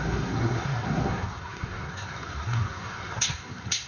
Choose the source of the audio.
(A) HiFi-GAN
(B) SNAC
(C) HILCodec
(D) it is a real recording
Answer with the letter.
B